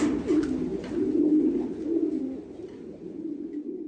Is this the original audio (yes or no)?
yes